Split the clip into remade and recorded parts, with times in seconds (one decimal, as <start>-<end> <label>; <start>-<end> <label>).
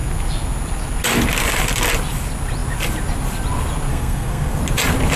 0.0-3.9 recorded; 3.9-4.6 remade; 4.6-5.2 recorded